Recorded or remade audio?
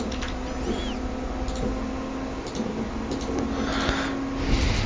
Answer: recorded